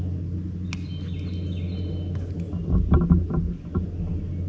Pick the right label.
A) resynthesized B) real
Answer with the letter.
B